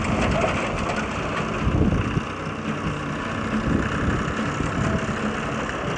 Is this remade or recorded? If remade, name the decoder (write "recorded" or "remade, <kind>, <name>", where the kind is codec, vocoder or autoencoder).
recorded